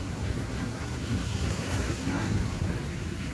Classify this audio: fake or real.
fake